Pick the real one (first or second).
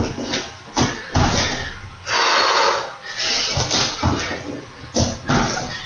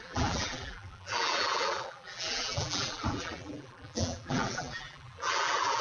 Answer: first